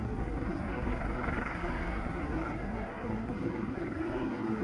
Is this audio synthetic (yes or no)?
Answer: yes